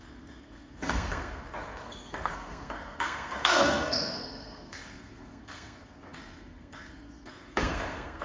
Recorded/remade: remade